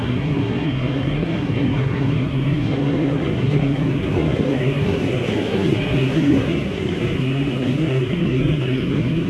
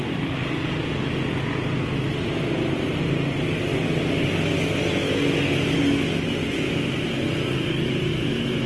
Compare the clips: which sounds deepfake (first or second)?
first